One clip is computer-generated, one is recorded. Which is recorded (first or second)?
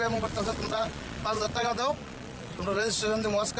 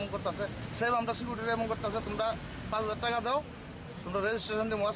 second